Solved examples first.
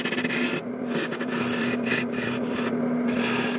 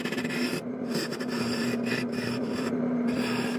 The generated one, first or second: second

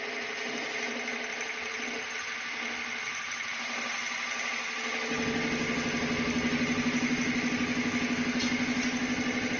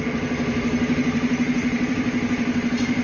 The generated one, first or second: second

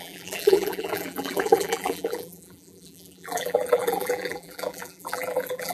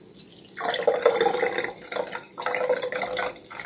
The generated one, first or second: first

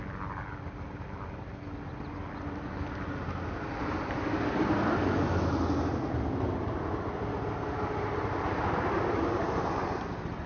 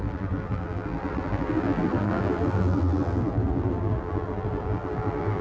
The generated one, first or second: second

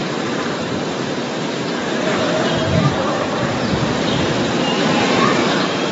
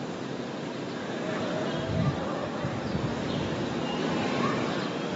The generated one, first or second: first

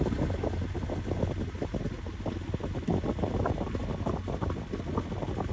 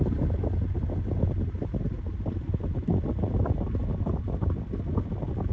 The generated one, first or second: second